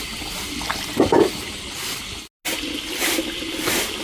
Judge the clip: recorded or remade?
recorded